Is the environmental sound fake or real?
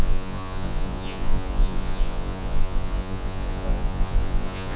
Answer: fake